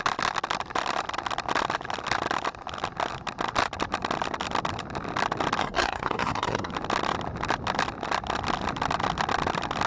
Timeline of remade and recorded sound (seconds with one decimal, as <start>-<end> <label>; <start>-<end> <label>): 0.0-5.6 recorded; 5.6-6.7 remade; 6.7-9.9 recorded